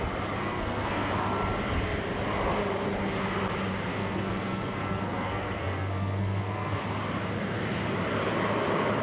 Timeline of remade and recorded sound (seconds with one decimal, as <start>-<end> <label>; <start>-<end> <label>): 0.0-0.4 recorded; 0.4-1.1 remade; 1.1-3.9 recorded; 3.9-6.8 remade; 6.8-9.0 recorded